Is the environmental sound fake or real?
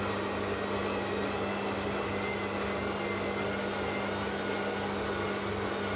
real